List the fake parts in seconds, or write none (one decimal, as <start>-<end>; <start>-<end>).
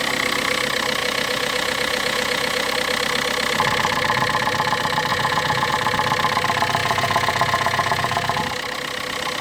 1.0-2.7; 5.1-5.7; 6.8-8.4